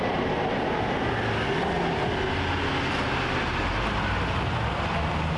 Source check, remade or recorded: recorded